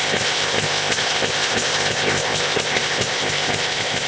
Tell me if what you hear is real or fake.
fake